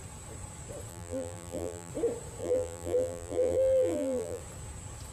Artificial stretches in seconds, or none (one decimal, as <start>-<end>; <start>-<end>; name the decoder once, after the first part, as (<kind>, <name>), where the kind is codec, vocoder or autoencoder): 0.9-1.9 (vocoder, BigVGAN v2); 2.4-4.4